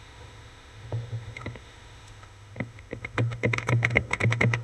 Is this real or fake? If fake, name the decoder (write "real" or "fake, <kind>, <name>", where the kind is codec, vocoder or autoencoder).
fake, autoencoder, DAC-VAE